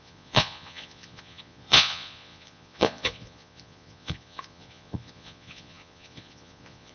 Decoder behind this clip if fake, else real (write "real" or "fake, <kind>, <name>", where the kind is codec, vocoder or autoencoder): fake, vocoder, Vocos